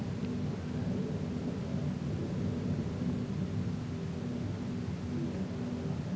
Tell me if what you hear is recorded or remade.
recorded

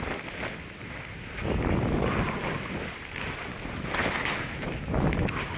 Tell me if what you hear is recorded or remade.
recorded